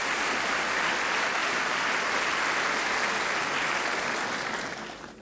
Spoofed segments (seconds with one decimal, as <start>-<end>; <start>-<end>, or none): none